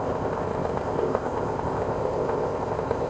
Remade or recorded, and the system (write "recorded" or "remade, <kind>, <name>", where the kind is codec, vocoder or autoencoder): remade, codec, ZipCodec